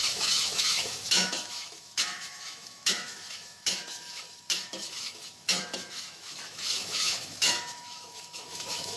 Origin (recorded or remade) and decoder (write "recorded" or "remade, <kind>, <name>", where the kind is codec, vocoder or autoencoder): remade, autoencoder, DAC-VAE